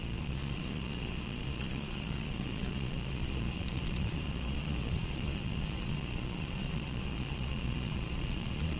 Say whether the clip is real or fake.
fake